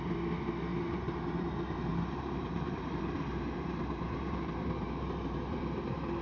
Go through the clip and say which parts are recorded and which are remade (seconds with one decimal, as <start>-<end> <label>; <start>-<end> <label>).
0.0-0.7 recorded; 0.7-1.5 remade; 1.5-1.9 recorded; 1.9-5.6 remade; 5.6-6.2 recorded